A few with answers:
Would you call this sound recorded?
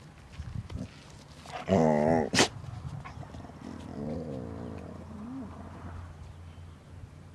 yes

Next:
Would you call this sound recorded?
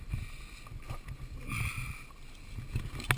yes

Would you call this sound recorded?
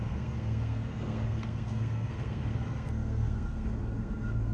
no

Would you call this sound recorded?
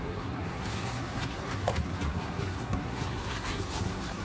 no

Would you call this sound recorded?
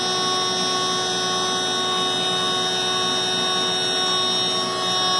yes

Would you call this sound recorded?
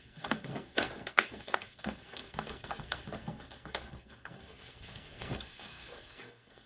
no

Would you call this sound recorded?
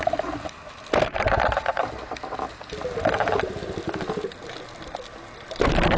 yes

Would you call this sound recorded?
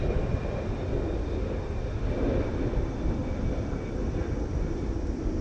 yes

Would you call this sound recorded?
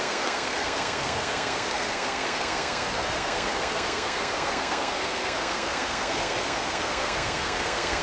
no